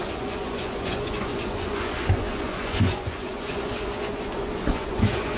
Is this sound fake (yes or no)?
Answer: yes